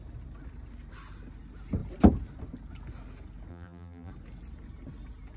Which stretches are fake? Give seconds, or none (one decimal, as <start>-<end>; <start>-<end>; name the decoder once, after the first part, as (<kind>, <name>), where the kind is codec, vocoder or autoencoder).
3.5-4.1 (vocoder, BigVGAN v2)